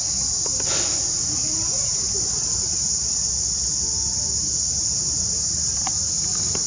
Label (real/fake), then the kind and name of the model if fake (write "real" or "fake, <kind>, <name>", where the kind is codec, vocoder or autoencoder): real